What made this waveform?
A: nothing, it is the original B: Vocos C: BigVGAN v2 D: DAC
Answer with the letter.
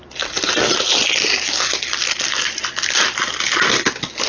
A